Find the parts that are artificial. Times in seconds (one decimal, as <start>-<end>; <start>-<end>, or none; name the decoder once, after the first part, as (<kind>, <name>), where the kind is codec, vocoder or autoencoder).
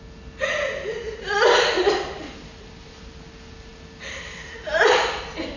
none